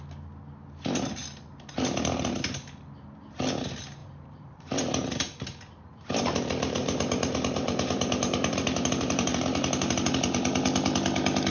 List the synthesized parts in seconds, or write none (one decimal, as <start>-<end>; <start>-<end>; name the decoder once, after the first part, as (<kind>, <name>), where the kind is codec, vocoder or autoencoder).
4.0-5.4 (vocoder, BigVGAN v2); 6.8-10.1